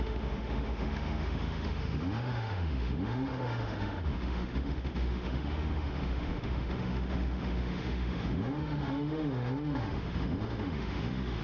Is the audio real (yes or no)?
no